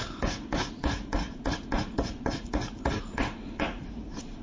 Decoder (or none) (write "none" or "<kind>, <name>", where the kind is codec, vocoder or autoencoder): vocoder, Vocos